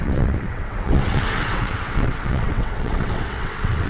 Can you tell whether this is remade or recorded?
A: remade